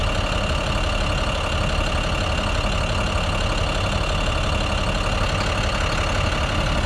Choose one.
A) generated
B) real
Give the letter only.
B